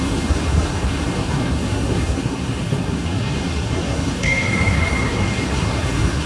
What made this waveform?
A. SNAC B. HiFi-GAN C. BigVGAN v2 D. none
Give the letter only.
A